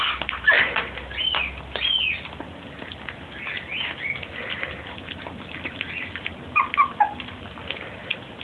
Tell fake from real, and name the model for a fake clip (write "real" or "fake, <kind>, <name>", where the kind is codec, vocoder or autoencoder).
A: real